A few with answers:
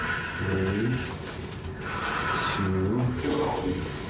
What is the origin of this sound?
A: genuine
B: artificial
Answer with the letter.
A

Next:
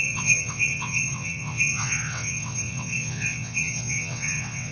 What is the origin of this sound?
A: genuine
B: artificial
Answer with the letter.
B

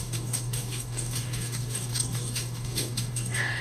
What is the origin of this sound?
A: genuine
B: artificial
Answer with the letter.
B